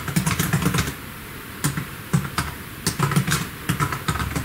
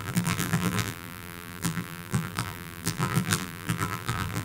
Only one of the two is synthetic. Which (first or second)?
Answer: second